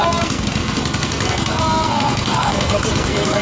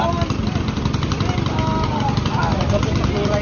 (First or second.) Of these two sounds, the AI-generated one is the first